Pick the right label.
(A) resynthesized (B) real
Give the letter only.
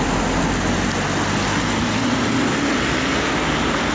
B